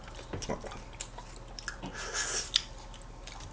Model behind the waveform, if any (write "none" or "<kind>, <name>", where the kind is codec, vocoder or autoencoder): none